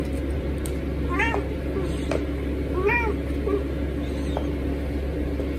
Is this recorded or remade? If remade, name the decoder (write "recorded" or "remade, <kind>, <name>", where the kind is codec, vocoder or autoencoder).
recorded